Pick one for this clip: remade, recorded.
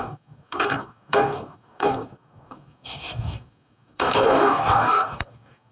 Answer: remade